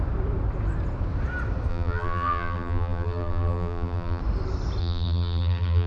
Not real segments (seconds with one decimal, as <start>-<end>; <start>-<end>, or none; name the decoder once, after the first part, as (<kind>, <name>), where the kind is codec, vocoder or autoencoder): 1.7-4.2 (vocoder, BigVGAN v2); 4.8-5.9